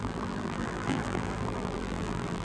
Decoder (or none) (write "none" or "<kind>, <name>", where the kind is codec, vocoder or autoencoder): vocoder, BigVGAN v2